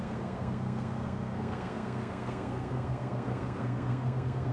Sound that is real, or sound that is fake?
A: fake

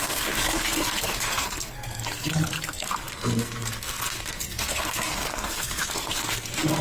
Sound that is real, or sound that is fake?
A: fake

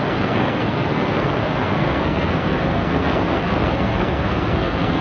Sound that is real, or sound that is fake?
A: fake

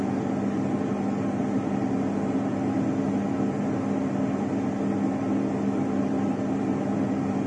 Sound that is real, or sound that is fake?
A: real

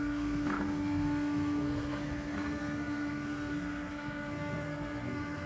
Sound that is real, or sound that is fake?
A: fake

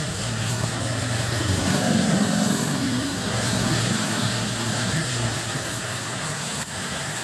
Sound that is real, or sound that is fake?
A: fake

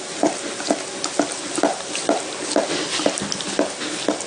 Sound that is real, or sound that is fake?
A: real